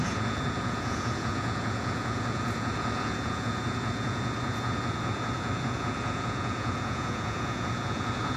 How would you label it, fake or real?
fake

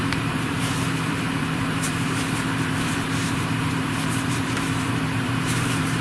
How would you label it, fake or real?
fake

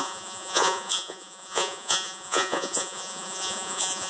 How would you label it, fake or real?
fake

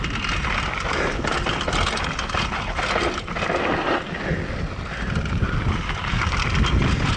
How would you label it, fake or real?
real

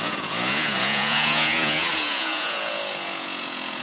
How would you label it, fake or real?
fake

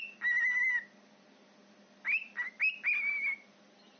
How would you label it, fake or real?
real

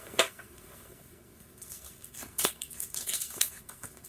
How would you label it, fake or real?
fake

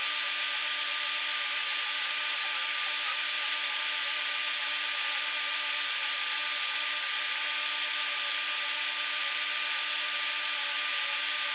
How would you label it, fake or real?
real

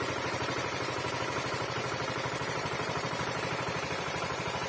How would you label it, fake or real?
fake